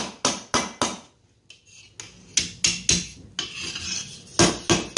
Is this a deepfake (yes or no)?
no